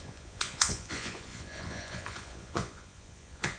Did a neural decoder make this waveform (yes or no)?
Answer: yes